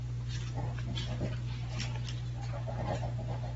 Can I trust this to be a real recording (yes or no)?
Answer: yes